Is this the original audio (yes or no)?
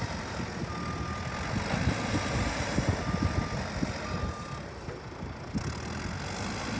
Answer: yes